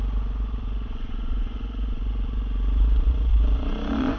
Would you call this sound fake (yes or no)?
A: yes